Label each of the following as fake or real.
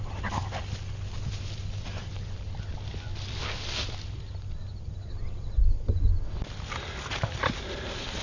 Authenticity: real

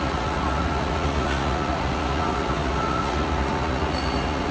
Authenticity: fake